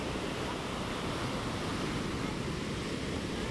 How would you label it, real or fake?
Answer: real